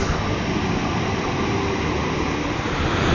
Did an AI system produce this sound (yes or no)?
no